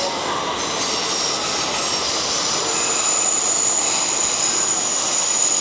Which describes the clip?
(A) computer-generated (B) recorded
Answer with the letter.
B